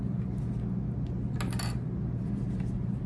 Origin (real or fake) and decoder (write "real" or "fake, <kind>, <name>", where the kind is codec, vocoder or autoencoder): real